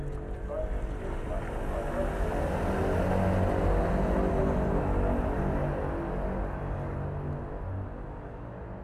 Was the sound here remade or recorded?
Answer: recorded